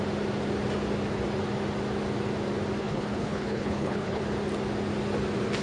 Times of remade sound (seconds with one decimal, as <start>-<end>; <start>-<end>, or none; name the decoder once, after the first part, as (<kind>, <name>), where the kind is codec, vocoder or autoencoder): 2.8-4.2 (codec, HILCodec)